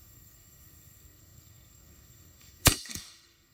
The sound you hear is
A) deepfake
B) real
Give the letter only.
A